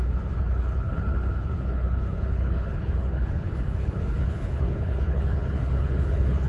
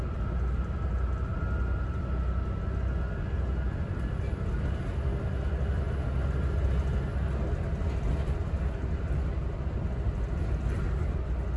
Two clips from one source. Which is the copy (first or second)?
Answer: first